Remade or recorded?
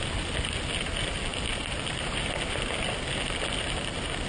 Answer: recorded